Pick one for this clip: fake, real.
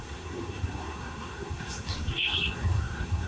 fake